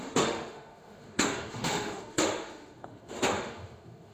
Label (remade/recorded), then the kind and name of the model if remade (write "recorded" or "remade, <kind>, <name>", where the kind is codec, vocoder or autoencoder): remade, autoencoder, DAC-VAE